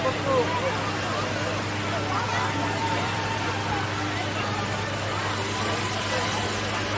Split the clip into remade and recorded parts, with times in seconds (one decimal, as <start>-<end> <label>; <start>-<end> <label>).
0.0-2.8 recorded; 2.8-3.5 remade; 3.5-7.0 recorded